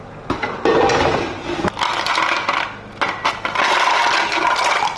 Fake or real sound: real